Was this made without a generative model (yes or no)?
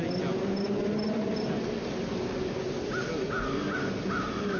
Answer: yes